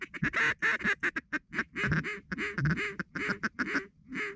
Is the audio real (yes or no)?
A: yes